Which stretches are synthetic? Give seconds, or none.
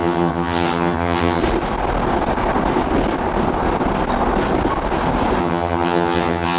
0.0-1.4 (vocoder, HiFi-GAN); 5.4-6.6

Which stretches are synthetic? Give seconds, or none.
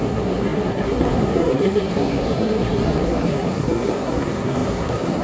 0.0-5.2 (codec, SNAC)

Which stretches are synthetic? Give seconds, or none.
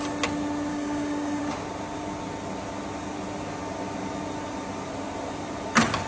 0.7-1.4 (codec, DAC)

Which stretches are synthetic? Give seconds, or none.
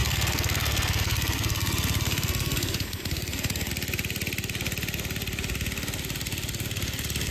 0.0-3.7 (codec, SNAC)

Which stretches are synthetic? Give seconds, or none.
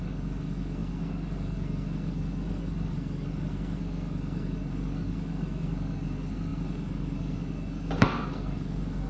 0.0-9.1 (codec, SNAC)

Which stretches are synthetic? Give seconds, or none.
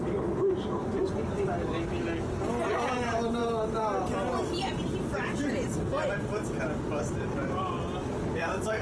none